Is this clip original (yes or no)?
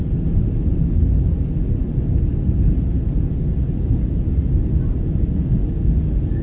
yes